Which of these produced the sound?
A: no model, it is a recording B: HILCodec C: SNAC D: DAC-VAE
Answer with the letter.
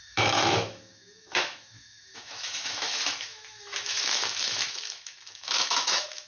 D